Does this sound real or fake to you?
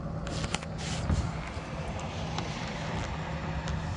real